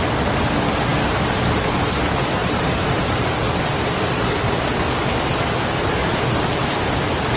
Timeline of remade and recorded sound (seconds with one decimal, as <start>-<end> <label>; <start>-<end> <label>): 0.0-2.4 recorded; 2.4-3.3 remade; 3.3-6.0 recorded; 6.0-7.0 remade; 7.0-7.4 recorded